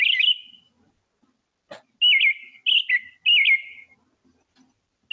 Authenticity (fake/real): real